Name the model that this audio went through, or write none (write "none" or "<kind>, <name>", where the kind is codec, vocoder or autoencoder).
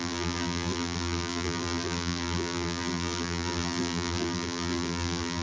vocoder, BigVGAN v2